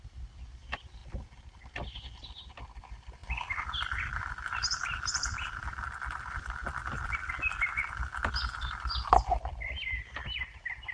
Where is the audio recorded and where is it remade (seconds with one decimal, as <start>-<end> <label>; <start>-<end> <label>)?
0.0-10.9 remade